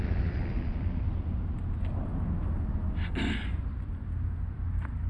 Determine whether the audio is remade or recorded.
recorded